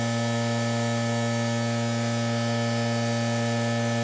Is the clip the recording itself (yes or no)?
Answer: yes